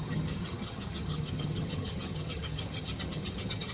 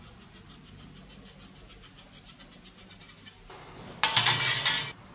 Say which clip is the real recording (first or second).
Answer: second